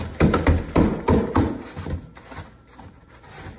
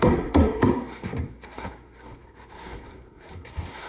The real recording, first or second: first